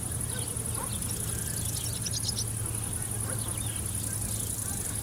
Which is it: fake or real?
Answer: real